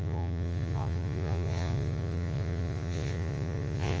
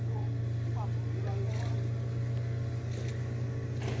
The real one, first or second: second